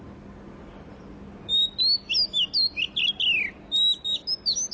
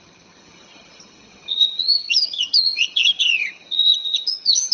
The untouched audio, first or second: first